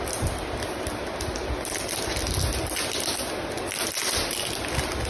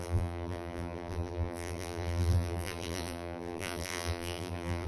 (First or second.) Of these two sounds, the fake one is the second